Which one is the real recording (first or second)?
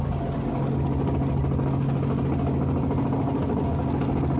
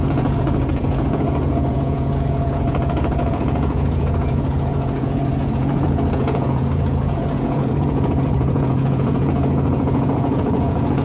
first